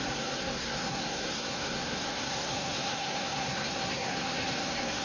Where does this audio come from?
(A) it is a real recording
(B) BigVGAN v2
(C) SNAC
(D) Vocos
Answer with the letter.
C